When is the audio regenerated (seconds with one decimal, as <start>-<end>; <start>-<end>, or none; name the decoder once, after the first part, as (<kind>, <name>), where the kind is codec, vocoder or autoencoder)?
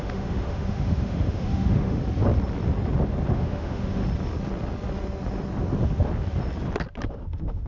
0.0-2.0 (autoencoder, DAC-VAE); 3.3-4.0; 7.1-7.7